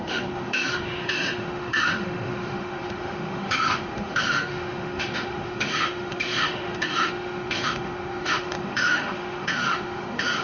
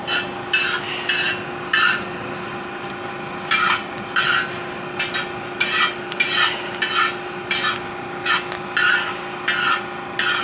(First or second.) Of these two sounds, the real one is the second